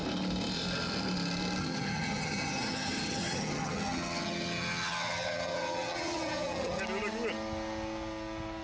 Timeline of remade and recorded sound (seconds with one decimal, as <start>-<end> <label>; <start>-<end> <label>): 0.0-1.6 recorded; 1.6-6.8 remade; 6.8-8.6 recorded